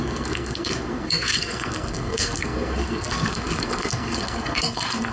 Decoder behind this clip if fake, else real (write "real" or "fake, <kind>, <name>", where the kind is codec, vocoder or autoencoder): fake, codec, SNAC